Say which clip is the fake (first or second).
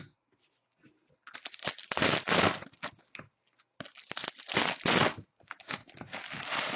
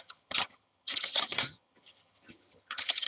second